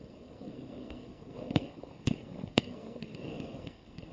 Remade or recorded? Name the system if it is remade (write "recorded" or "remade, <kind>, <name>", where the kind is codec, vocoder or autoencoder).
remade, codec, SNAC